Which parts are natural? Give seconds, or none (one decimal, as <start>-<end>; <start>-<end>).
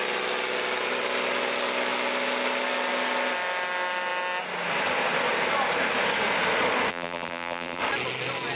0.0-6.9; 7.8-8.6